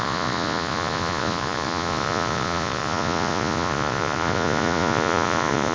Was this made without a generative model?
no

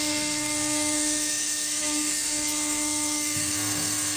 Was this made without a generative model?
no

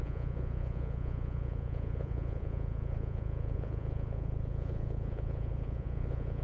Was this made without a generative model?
no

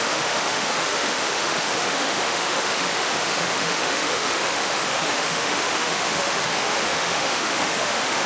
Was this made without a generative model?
no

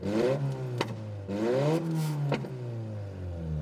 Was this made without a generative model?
yes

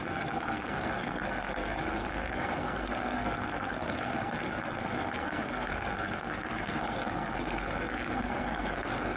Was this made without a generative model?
no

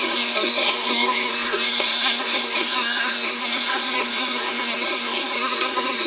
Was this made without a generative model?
no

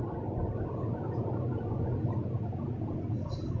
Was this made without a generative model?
yes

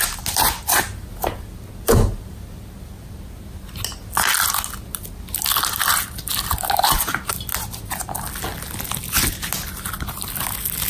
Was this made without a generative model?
yes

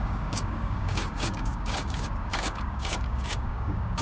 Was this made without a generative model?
no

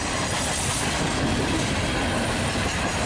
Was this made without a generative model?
yes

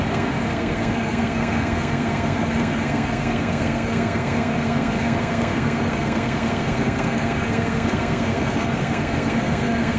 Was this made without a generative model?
no